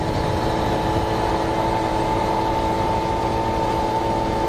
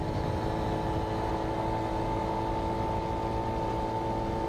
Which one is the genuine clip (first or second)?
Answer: second